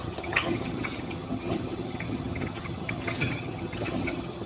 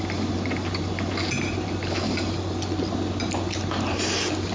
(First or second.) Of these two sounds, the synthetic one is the first